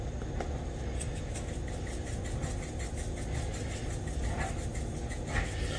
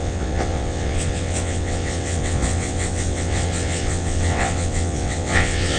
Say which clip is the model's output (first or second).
second